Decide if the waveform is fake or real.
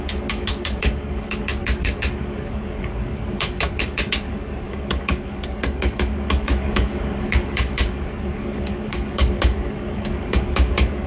fake